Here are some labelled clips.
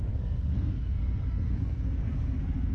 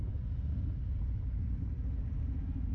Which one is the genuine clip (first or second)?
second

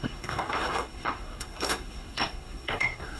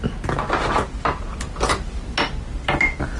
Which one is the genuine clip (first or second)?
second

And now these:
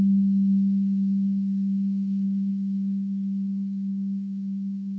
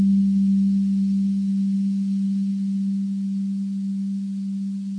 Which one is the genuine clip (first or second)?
second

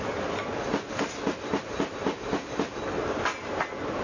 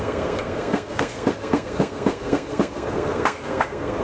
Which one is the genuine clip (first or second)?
first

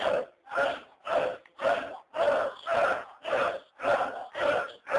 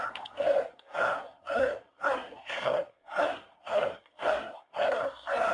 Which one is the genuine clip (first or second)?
first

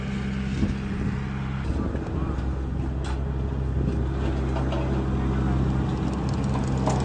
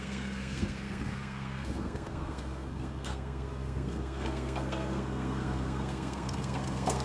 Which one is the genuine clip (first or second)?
first